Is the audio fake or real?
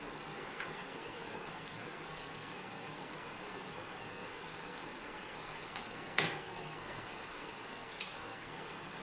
fake